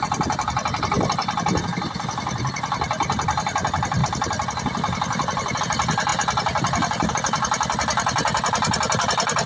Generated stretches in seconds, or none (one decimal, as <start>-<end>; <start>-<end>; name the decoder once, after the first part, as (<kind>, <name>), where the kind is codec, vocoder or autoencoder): none